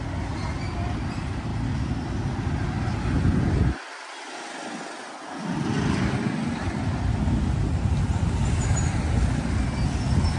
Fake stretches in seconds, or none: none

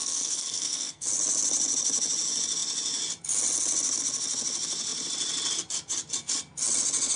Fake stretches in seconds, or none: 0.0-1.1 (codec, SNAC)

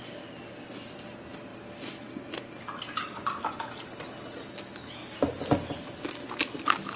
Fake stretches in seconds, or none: none

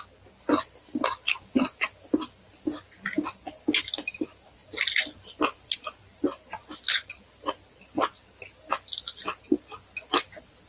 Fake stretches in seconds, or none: none